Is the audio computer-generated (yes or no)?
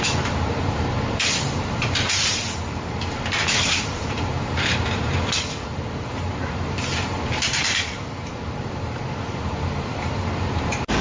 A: yes